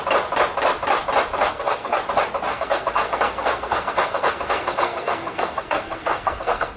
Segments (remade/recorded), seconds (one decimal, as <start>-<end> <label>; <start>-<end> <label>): 0.0-1.5 recorded; 1.5-2.0 remade; 2.0-2.5 recorded; 2.5-6.8 remade

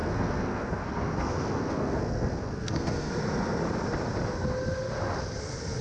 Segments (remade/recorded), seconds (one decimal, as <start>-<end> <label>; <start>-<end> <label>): 0.0-3.1 remade; 3.1-5.8 recorded

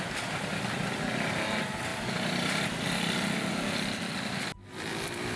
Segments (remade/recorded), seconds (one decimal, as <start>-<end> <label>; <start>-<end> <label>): 0.0-5.4 recorded

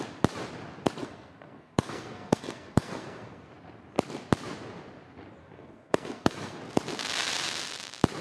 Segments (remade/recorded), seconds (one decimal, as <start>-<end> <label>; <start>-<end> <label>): 0.0-1.0 recorded; 1.0-3.5 remade; 3.5-5.4 recorded; 5.4-6.6 remade; 6.6-8.2 recorded

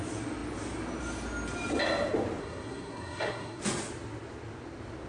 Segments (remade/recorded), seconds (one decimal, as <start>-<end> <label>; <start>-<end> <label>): 0.0-2.4 recorded; 2.4-3.6 remade; 3.6-5.1 recorded

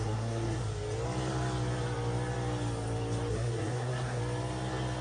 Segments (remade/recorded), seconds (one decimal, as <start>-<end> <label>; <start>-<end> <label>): 0.0-0.6 remade; 0.6-3.3 recorded; 3.3-4.2 remade; 4.2-5.0 recorded